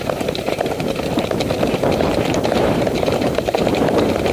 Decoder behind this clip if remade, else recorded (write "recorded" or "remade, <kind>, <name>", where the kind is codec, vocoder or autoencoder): remade, vocoder, BigVGAN v2